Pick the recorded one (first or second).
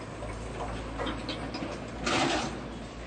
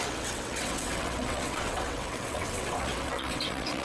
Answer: first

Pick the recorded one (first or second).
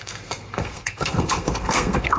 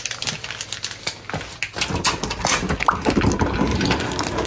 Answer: second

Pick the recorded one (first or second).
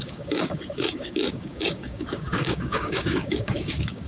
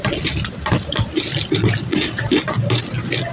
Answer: second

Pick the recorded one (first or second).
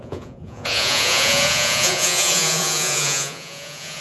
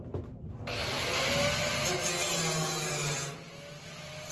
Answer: second